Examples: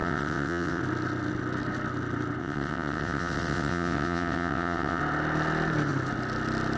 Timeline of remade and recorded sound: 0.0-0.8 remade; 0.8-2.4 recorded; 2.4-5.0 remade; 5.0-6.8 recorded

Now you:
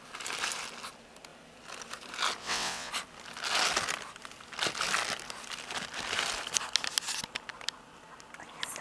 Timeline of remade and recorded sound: 0.0-2.4 recorded; 2.4-2.9 remade; 2.9-8.8 recorded

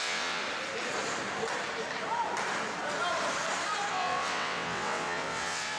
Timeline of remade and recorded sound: 0.0-0.4 remade; 0.4-3.9 recorded; 3.9-5.8 remade

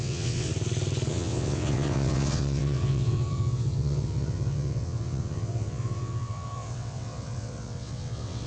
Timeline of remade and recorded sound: 0.0-0.5 remade; 0.5-1.1 recorded; 1.1-8.5 remade

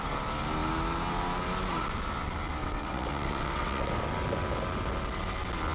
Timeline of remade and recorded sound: 0.0-2.6 recorded; 2.6-3.9 remade; 3.9-5.7 recorded

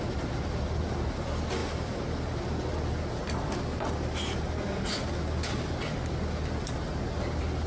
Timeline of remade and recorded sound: 0.0-7.7 recorded

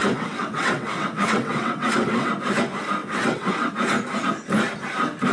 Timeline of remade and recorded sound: 0.0-2.3 remade; 2.3-3.0 recorded; 3.0-3.7 remade; 3.7-5.3 recorded